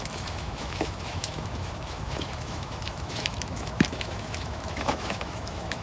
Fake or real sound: fake